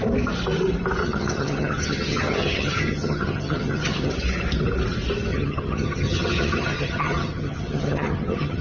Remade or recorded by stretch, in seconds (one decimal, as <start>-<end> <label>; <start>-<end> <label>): 0.0-1.0 recorded; 1.0-4.1 remade; 4.1-5.3 recorded; 5.3-8.6 remade